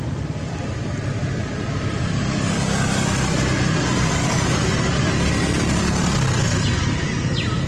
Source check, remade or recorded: recorded